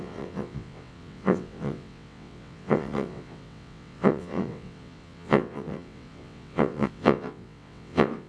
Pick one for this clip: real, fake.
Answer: fake